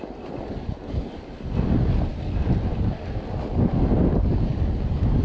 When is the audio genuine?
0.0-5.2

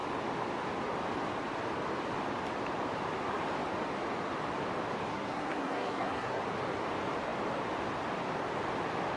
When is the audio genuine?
0.0-5.1; 6.4-9.2

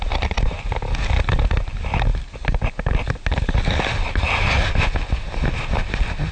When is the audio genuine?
0.0-6.3

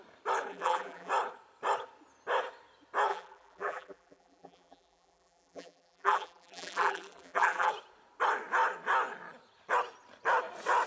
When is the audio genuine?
0.0-0.5; 1.1-3.1; 7.7-10.9